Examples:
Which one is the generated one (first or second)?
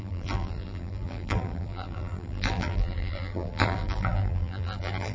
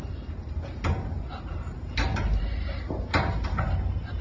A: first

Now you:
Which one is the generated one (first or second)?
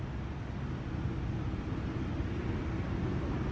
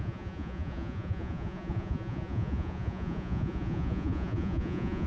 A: second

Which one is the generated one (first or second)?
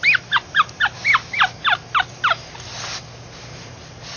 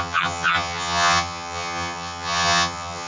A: second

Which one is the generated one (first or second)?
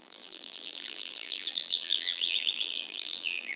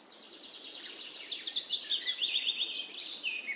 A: first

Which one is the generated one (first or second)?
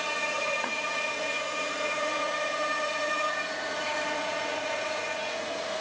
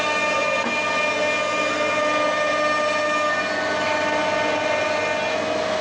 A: first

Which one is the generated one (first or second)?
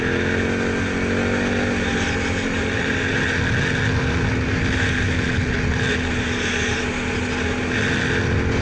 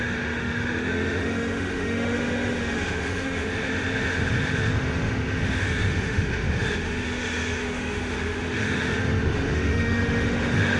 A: second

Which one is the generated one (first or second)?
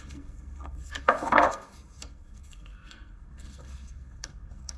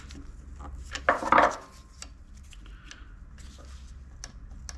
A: first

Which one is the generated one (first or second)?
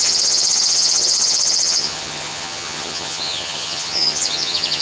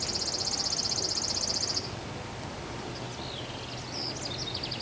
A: first